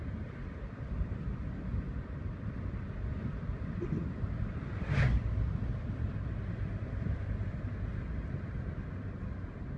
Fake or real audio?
fake